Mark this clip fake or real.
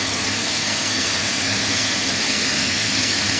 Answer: fake